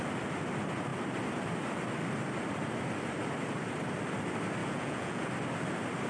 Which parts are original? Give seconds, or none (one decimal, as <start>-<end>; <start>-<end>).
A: 0.0-4.6; 5.3-6.1